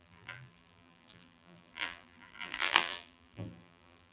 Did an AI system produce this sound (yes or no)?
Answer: yes